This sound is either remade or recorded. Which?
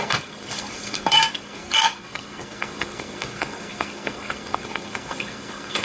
remade